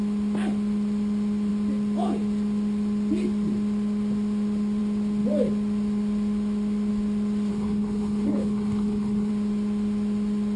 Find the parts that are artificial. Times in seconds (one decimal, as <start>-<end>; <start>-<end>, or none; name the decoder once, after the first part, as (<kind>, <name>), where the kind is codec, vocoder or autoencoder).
7.5-9.3 (codec, HILCodec)